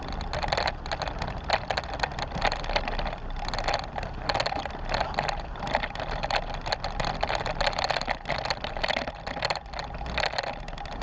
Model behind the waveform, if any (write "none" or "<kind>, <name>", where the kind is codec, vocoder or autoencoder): none